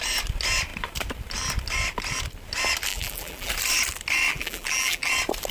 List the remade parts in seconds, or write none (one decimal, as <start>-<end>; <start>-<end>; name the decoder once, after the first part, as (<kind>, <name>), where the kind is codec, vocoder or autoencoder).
2.9-3.5 (vocoder, BigVGAN v2); 4.3-5.1